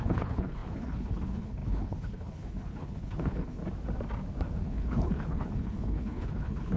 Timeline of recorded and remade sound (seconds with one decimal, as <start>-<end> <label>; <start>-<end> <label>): 0.0-3.6 remade; 3.6-4.6 recorded; 4.6-6.8 remade